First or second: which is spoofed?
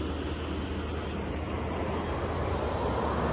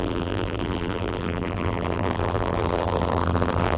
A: second